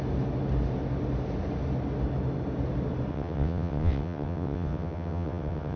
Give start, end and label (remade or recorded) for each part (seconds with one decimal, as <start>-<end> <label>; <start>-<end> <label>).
0.0-3.1 recorded; 3.1-5.8 remade